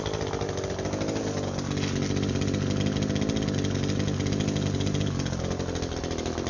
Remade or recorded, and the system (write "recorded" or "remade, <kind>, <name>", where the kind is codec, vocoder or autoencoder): recorded